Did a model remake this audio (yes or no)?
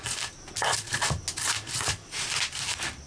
no